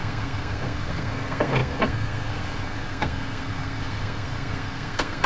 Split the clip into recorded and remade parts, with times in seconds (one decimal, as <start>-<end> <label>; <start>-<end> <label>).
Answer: 0.0-5.3 remade